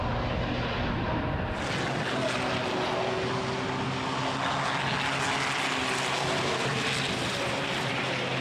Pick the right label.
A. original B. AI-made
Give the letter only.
A